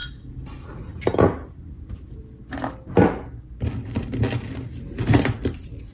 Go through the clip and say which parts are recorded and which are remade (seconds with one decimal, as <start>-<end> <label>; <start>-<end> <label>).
0.0-5.9 recorded